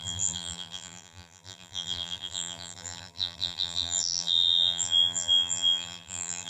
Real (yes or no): no